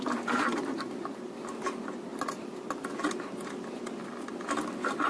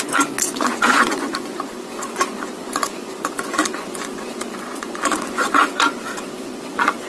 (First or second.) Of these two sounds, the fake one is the second